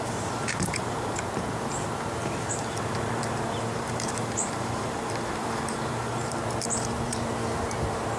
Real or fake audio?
fake